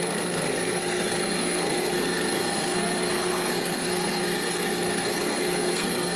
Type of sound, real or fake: fake